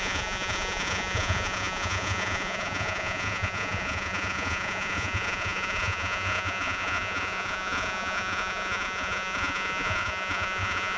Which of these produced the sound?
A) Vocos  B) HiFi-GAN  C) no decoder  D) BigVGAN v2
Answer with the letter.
A